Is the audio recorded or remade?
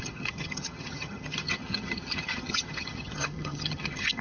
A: remade